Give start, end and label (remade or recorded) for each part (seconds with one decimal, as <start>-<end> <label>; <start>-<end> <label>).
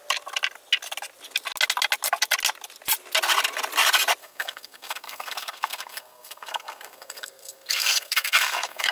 0.0-4.2 recorded; 4.2-8.9 remade